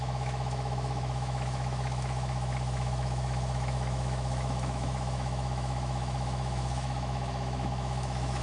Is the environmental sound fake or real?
fake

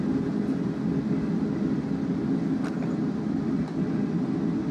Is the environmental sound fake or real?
real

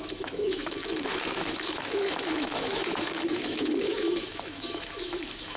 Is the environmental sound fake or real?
fake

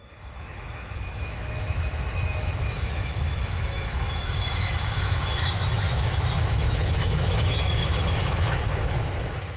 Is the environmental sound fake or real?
fake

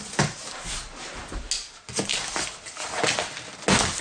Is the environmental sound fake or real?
real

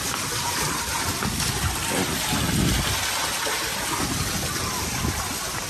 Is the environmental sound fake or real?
real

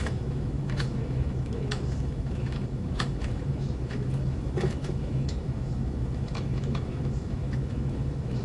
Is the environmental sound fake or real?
fake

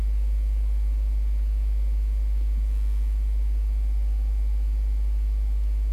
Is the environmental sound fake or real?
real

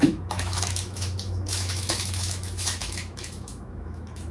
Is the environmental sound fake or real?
fake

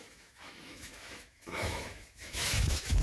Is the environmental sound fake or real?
fake